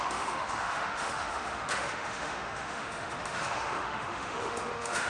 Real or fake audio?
fake